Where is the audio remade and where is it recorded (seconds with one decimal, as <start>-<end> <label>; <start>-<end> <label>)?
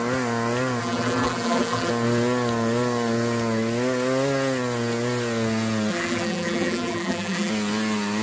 0.0-0.8 recorded; 0.8-1.9 remade; 1.9-5.9 recorded; 5.9-7.5 remade; 7.5-8.2 recorded